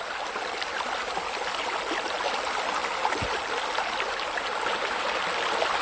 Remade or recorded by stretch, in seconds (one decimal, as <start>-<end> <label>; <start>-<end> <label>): 0.0-5.8 recorded